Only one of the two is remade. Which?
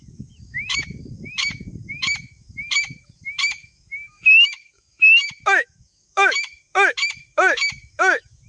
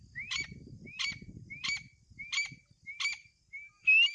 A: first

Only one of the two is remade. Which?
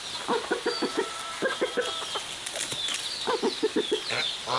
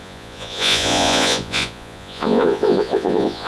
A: second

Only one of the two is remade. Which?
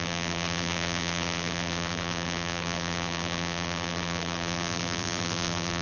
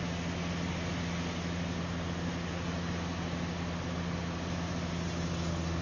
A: first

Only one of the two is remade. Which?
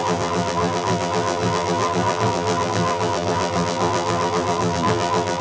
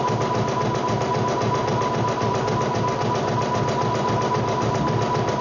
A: first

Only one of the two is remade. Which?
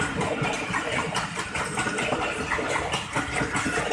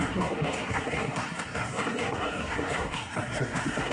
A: second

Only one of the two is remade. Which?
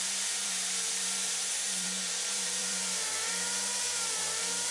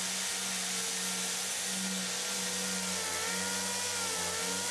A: first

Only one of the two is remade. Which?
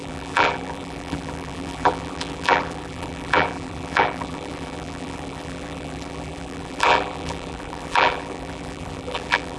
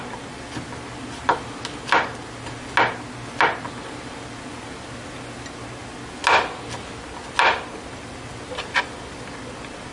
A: first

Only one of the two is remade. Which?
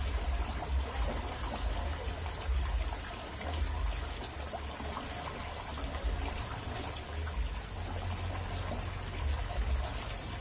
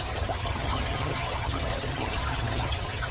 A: second